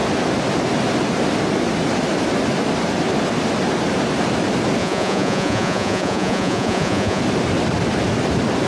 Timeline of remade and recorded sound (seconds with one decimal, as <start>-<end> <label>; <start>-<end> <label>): 0.0-4.8 recorded; 4.8-7.2 remade; 7.2-8.7 recorded